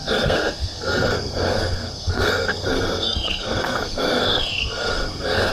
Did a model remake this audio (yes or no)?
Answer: yes